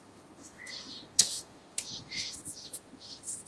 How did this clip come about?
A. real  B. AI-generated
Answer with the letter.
B